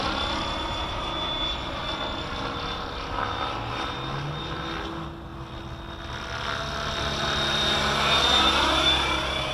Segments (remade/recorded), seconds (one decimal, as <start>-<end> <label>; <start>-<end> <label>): 0.0-9.5 recorded